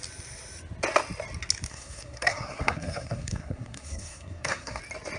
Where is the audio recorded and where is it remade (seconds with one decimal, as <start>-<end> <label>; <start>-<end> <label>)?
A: 0.0-1.7 recorded; 1.7-4.8 remade; 4.8-5.2 recorded